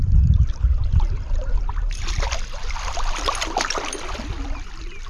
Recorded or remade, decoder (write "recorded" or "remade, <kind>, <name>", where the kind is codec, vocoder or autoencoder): recorded